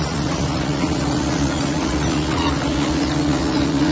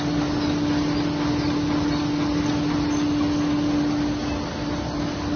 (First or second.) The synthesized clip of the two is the first